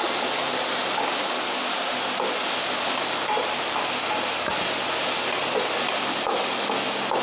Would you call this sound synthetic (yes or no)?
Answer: no